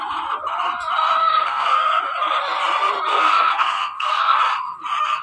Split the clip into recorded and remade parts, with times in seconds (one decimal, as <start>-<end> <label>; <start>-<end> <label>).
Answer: 0.0-1.2 recorded; 1.2-2.0 remade; 2.0-3.1 recorded; 3.1-4.4 remade; 4.4-5.2 recorded